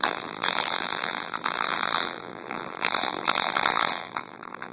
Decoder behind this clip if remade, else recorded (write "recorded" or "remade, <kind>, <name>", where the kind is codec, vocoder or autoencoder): remade, vocoder, BigVGAN v2